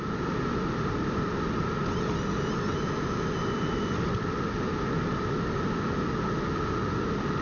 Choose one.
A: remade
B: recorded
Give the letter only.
B